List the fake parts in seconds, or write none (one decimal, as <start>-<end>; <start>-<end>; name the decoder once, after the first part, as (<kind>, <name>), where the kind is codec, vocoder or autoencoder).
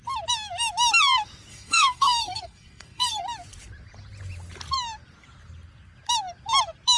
1.5-3.2 (codec, SNAC)